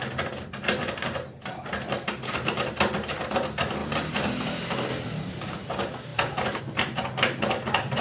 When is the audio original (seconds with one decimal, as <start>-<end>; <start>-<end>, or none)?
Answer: 0.0-8.0